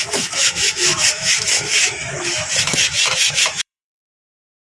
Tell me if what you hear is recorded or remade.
remade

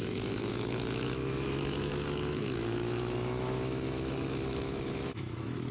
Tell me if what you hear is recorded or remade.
remade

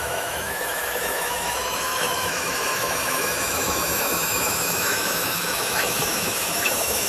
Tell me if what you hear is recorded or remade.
remade